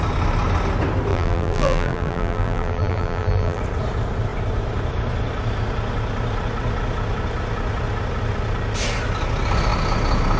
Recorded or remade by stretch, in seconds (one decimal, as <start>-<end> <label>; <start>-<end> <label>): 0.0-1.1 recorded; 1.1-3.6 remade; 3.6-10.4 recorded